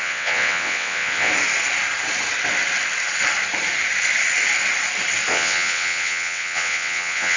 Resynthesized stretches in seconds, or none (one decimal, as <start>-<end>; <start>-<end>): 0.0-1.3; 5.3-7.4